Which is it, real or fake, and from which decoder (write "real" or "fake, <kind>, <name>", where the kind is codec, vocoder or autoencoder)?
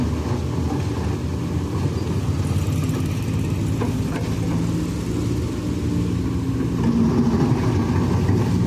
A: real